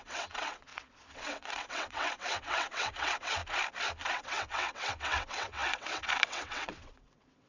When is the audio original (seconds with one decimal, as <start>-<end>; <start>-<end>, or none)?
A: 3.4-4.1